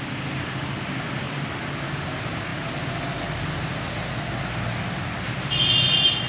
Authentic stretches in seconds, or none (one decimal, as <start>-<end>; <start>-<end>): 0.0-6.3